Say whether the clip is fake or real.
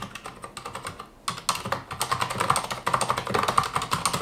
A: real